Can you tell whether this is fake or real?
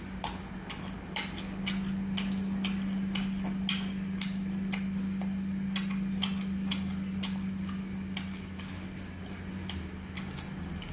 real